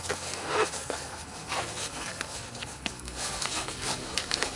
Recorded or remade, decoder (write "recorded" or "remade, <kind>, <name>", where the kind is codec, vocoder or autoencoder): remade, codec, SNAC